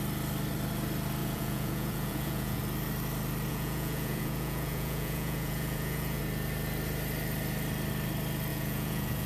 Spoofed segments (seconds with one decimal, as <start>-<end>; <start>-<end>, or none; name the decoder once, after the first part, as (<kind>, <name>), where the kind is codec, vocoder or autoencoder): 1.2-2.6 (vocoder, Vocos); 3.5-6.2; 8.5-9.3